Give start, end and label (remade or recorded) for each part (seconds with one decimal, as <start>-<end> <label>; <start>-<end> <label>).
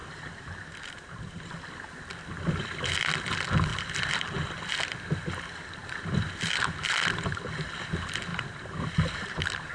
0.0-1.9 remade; 1.9-3.7 recorded; 3.7-4.6 remade; 4.6-5.8 recorded; 5.8-7.7 remade; 7.7-8.3 recorded; 8.3-9.7 remade